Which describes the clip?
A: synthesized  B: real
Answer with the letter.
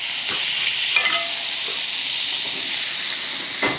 A